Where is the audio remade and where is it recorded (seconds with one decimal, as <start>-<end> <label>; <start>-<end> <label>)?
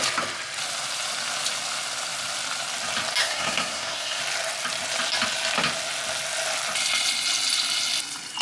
0.0-3.2 recorded; 3.2-4.2 remade; 4.2-8.4 recorded